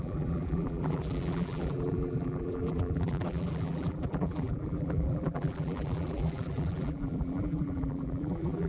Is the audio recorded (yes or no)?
no